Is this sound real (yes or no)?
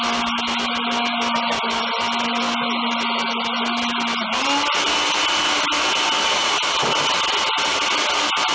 yes